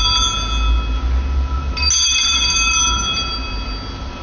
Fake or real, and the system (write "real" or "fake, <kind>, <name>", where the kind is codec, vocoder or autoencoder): real